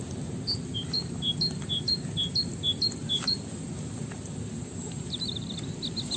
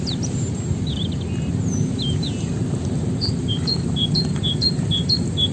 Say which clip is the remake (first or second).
second